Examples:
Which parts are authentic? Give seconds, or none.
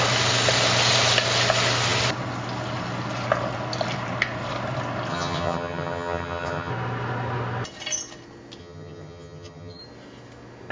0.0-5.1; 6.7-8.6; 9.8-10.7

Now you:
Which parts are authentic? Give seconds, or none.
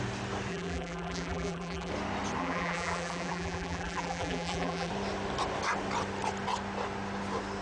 0.0-0.5; 1.9-2.4; 4.9-7.6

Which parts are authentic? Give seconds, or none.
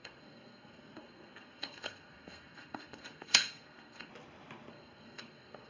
4.1-4.7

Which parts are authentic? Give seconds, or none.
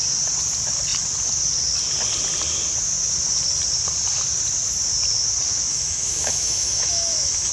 0.0-5.7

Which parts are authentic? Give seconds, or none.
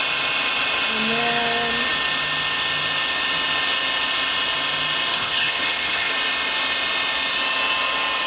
0.0-5.1; 6.1-8.3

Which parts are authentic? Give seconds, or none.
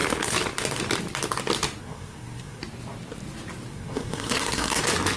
0.0-1.8; 2.6-3.7; 4.8-5.2